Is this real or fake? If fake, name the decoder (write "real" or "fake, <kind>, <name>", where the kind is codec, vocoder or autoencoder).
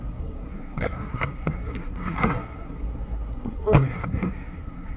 fake, codec, SNAC